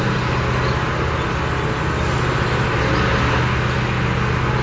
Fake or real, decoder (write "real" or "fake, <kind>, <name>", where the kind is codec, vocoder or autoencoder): real